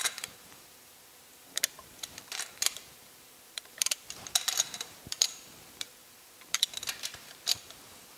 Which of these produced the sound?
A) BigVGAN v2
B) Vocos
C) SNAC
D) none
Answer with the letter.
A